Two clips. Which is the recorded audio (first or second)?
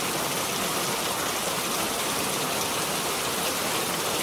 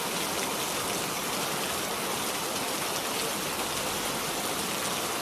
second